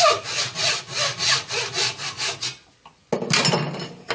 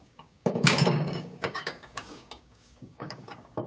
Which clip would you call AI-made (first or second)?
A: second